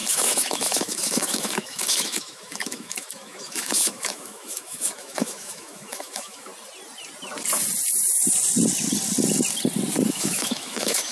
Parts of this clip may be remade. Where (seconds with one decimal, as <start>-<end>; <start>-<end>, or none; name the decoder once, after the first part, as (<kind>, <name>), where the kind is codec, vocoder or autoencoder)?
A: 0.0-6.5 (autoencoder, DAC-VAE); 10.1-11.1